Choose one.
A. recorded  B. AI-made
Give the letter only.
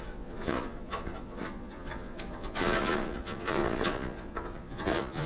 B